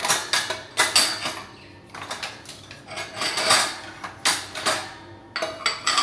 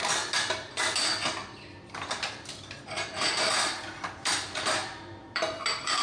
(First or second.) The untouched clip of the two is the first